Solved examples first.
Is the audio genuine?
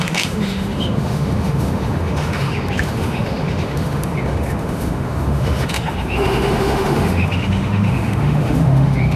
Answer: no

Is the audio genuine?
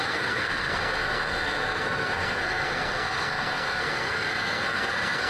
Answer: no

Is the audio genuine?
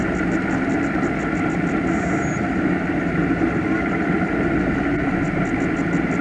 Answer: yes